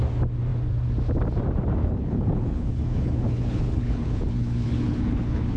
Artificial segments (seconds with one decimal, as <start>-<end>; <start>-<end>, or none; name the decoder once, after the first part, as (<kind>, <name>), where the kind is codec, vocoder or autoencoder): 1.8-5.6 (codec, HILCodec)